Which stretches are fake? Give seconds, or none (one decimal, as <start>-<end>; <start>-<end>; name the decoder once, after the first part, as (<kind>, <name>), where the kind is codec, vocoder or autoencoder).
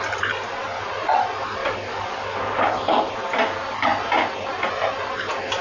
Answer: 1.6-3.1 (codec, DAC)